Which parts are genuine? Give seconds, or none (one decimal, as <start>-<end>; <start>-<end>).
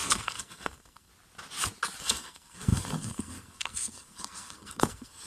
1.1-2.0